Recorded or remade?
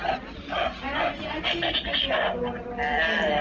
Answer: recorded